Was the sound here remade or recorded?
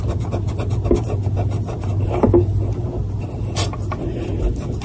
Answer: recorded